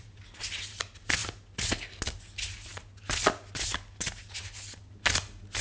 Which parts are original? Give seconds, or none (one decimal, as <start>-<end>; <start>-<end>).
0.0-5.6